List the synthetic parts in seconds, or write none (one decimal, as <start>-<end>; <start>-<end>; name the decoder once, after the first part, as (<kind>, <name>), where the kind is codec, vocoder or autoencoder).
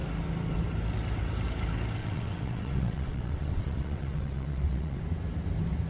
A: 2.0-5.0 (vocoder, WaveNeXt)